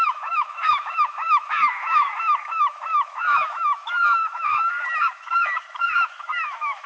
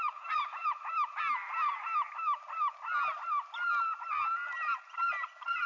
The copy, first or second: first